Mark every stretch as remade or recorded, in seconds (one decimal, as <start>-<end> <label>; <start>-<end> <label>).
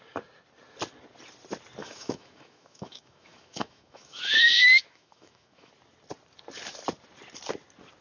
0.0-1.8 recorded; 1.8-5.7 remade; 5.7-8.0 recorded